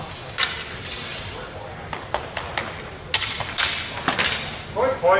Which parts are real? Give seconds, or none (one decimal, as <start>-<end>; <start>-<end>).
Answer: 0.0-5.2